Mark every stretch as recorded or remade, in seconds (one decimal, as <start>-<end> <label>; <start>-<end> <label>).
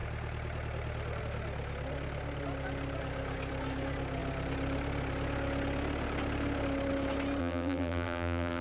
0.0-7.4 recorded; 7.4-8.6 remade